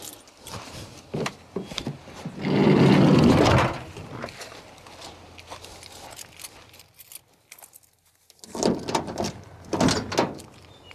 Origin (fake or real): real